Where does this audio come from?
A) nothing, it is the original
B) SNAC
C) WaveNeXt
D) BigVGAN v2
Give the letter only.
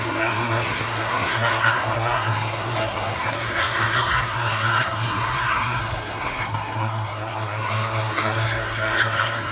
B